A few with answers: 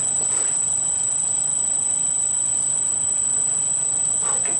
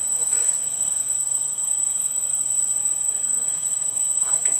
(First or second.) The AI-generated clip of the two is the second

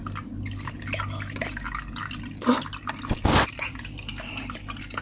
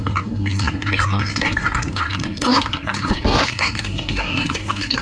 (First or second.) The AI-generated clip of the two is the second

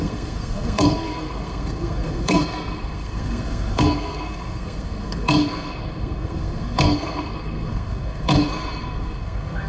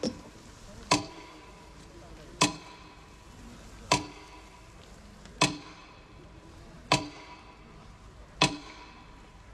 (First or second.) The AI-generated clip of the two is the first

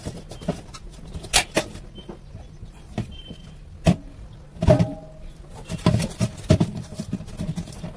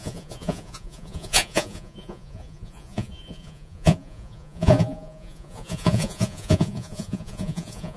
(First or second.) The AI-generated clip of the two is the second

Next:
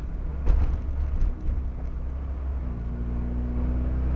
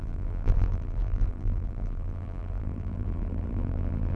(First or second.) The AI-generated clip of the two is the second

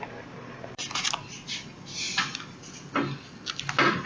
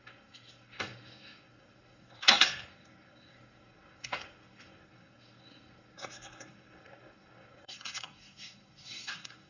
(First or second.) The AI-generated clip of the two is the second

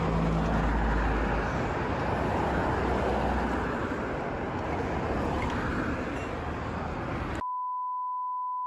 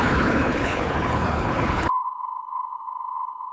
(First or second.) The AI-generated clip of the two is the second